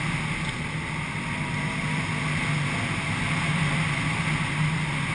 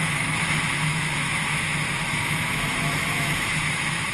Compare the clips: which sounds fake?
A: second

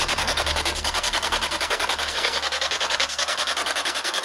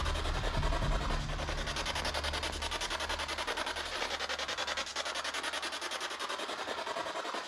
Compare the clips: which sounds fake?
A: first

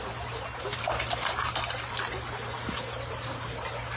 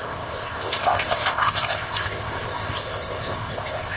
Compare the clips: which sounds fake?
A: second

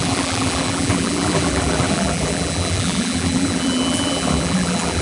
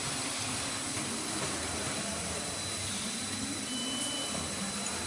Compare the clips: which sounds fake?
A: first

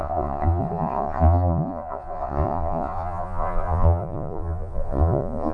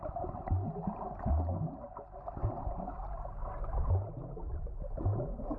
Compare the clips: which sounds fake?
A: first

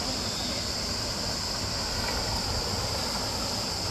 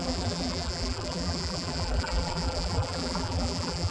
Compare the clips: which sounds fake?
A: second